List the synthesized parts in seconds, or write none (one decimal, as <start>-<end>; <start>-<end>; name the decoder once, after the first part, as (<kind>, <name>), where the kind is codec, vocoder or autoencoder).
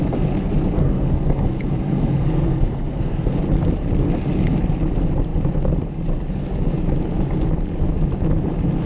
0.8-3.4 (codec, SNAC)